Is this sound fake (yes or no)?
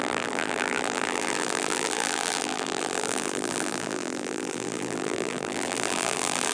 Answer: yes